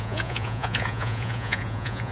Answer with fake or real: fake